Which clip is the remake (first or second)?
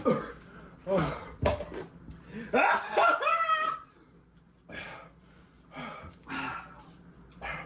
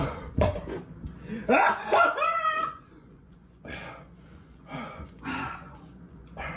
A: second